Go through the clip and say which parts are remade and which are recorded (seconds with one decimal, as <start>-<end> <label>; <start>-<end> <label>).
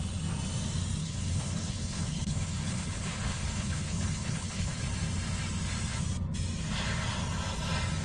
0.0-1.0 recorded; 1.0-4.8 remade; 4.8-8.0 recorded